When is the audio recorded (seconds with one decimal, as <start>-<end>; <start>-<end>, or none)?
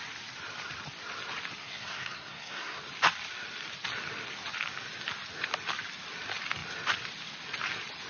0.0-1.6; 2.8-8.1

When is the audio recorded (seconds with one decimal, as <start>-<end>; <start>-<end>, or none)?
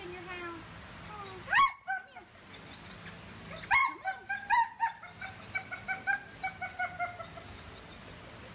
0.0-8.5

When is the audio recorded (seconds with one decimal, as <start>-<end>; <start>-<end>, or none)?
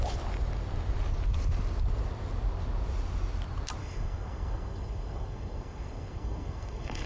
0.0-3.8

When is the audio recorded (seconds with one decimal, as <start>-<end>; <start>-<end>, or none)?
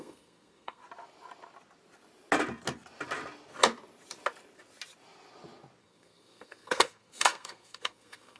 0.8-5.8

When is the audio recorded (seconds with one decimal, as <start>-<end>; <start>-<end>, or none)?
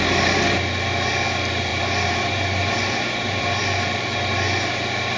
0.0-5.2